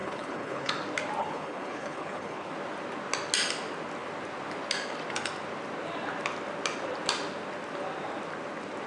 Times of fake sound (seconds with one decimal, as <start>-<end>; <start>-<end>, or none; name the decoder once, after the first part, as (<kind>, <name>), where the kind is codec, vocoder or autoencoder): 0.0-0.7 (codec, HILCodec); 1.2-2.5